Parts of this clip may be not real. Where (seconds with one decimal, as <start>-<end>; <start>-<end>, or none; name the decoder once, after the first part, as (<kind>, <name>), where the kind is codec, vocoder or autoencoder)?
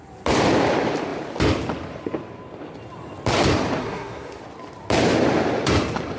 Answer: 3.8-4.4 (codec, SNAC)